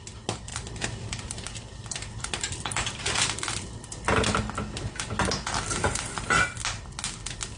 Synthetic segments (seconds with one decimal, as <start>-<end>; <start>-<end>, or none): 0.5-3.4